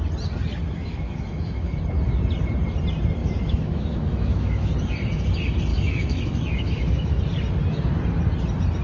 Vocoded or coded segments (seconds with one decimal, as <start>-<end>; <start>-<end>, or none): 0.8-1.8; 3.2-4.7; 5.7-7.2